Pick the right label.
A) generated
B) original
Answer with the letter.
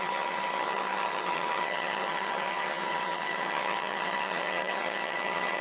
A